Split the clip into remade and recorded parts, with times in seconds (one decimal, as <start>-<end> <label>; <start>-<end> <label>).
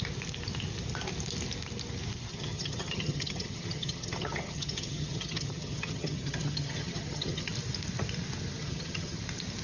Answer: 0.0-2.3 recorded; 2.3-7.5 remade; 7.5-8.6 recorded; 8.6-9.2 remade; 9.2-9.6 recorded